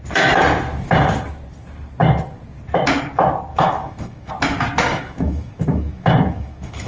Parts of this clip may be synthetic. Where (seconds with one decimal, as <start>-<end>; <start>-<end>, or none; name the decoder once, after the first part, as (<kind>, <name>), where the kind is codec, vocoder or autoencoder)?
3.5-4.3 (autoencoder, DAC-VAE); 4.9-6.9